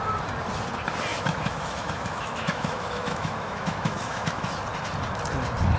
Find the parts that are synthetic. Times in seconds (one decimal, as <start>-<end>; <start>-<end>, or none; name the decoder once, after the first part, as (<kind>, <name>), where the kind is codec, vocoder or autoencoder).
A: 1.1-4.6 (autoencoder, DAC-VAE)